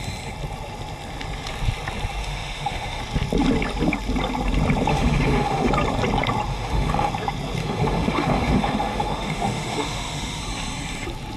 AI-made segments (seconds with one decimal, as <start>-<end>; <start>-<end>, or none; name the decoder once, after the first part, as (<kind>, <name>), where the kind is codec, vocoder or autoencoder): 2.2-3.0 (autoencoder, DAC-VAE); 4.9-5.7; 6.5-7.1; 7.6-10.4